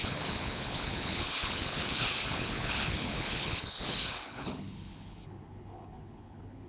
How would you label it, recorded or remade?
remade